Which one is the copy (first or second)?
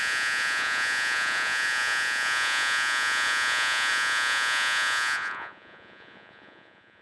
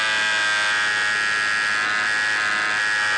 first